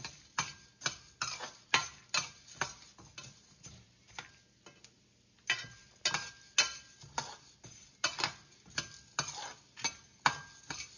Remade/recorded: recorded